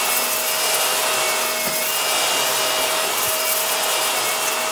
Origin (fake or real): real